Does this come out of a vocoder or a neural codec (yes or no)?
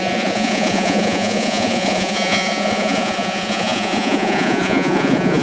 yes